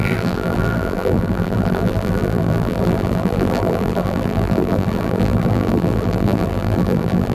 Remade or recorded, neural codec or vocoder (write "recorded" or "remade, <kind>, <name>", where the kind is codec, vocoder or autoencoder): remade, vocoder, BigVGAN v2